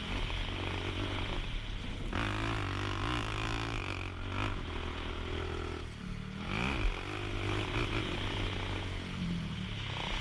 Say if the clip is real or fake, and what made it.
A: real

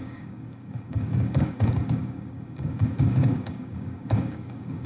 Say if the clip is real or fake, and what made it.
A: fake, codec, DAC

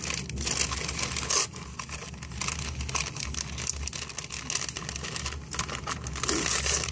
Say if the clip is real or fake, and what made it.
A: real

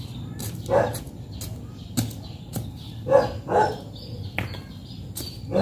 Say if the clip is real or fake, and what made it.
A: real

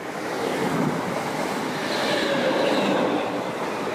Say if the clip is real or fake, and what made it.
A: real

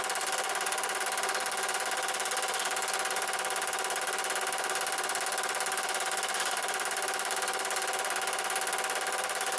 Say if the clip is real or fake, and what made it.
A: real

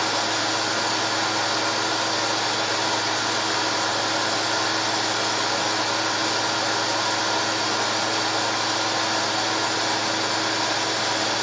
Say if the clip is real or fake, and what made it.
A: real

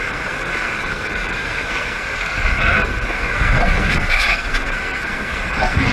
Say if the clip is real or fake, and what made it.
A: fake, codec, SNAC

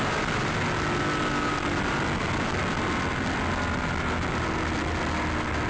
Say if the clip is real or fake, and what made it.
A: real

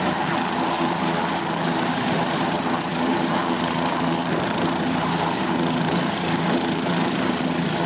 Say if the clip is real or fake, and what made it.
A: fake, vocoder, BigVGAN v2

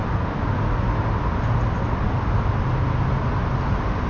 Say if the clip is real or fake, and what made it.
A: real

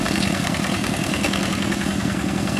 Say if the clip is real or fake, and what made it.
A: fake, codec, SNAC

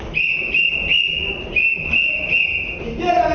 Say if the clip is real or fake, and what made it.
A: real